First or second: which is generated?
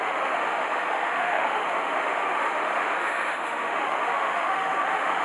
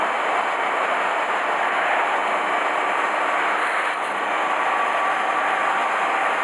first